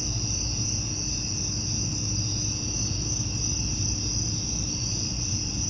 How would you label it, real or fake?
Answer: real